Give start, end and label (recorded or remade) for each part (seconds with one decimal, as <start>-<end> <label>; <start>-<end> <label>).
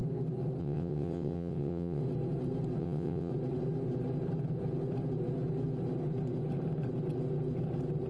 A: 0.0-0.6 recorded; 0.6-2.0 remade; 2.0-2.8 recorded; 2.8-3.3 remade; 3.3-8.1 recorded